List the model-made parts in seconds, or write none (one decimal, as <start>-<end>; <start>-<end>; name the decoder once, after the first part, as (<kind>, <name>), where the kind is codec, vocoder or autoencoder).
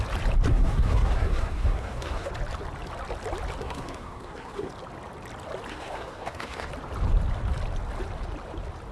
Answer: 0.5-2.3 (codec, SNAC); 3.6-4.7; 5.7-6.7